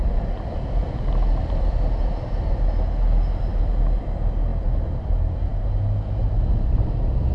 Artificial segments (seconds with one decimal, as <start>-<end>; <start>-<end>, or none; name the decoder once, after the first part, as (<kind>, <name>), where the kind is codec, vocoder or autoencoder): 0.8-2.1 (vocoder, BigVGAN v2); 4.5-5.1